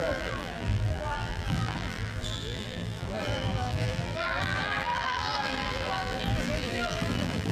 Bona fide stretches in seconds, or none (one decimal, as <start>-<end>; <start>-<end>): none